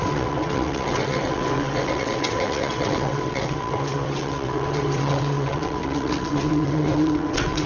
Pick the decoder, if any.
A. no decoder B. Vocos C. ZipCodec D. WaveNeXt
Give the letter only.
D